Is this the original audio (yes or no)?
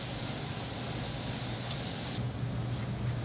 yes